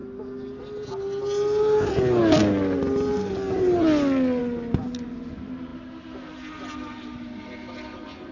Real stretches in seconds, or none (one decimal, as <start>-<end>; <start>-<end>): 0.0-8.3